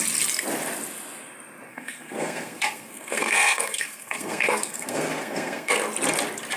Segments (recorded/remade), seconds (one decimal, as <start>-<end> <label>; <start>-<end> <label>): 0.0-1.7 recorded; 1.7-5.7 remade; 5.7-6.6 recorded